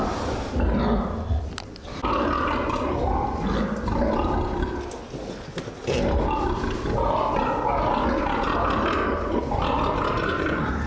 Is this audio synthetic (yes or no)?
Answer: no